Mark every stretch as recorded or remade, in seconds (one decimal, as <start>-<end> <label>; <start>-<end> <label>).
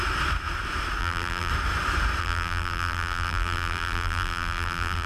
0.0-1.0 recorded; 1.0-1.5 remade; 1.5-2.2 recorded; 2.2-5.1 remade